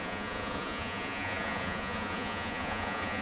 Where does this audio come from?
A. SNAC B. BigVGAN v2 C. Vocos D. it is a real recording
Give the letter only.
C